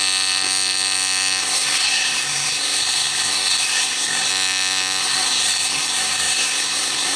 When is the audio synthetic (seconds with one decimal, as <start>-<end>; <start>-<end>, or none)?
1.4-4.3; 5.0-7.2